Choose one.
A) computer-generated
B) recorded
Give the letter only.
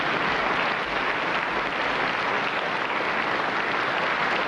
B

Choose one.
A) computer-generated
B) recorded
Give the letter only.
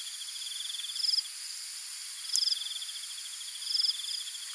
B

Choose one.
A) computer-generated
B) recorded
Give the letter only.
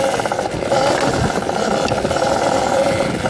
B